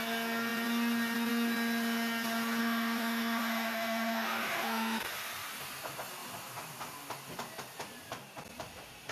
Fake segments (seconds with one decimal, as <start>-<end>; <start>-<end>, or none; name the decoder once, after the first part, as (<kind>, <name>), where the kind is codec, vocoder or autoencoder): 2.6-5.1 (autoencoder, DAC-VAE)